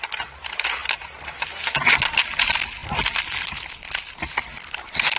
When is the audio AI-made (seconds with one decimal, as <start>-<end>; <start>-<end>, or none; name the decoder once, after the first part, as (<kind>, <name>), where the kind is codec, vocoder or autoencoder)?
none

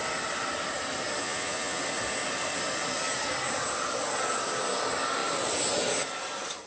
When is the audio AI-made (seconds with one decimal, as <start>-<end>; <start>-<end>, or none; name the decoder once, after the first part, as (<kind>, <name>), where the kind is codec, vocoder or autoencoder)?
1.2-1.8 (vocoder, Vocos)

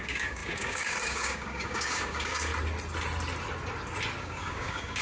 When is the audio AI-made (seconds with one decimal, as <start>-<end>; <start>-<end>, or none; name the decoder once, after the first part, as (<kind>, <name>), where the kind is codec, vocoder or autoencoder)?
0.0-2.5 (codec, DAC); 4.2-5.0